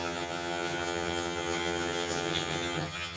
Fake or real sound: fake